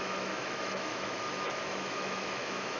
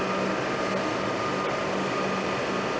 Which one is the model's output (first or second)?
first